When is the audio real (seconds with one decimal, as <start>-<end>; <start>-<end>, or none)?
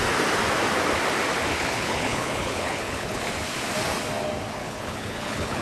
0.0-1.5; 3.2-4.6